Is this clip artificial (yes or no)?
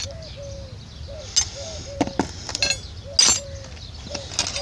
no